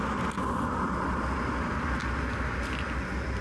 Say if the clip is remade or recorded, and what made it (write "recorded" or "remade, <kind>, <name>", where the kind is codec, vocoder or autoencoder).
recorded